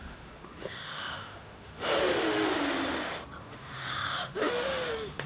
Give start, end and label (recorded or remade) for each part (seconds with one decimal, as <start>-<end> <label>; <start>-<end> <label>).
0.0-2.5 remade; 2.5-3.4 recorded; 3.4-5.3 remade